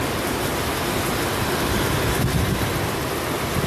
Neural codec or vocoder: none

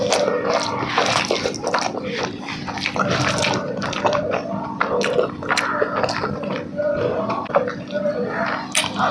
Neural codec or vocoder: none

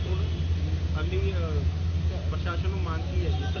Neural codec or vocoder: none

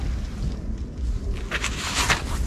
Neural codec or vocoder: none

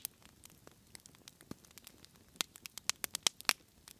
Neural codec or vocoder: none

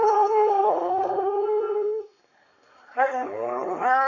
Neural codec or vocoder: codec, SNAC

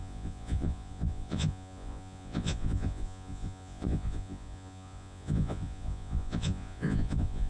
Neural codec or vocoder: vocoder, Vocos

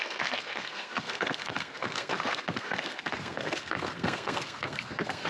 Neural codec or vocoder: codec, SNAC